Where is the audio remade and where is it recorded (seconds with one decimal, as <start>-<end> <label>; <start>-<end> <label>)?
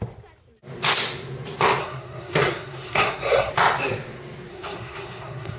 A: 0.0-1.8 recorded; 1.8-3.5 remade; 3.5-4.5 recorded; 4.5-5.6 remade